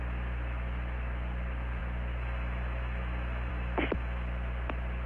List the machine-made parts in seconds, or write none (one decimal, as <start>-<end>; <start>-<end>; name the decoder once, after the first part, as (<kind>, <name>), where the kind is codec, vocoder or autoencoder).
none